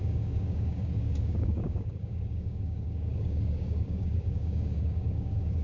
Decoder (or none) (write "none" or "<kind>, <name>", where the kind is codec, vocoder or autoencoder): codec, DAC